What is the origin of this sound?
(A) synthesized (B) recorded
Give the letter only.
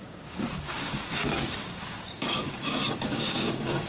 A